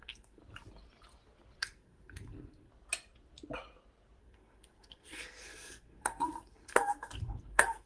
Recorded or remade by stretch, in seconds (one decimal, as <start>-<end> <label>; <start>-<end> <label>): 0.0-0.4 remade; 0.4-1.6 recorded; 1.6-2.7 remade; 2.7-4.2 recorded; 4.2-7.9 remade